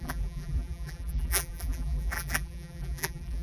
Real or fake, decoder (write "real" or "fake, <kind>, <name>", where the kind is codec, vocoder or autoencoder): fake, vocoder, BigVGAN v2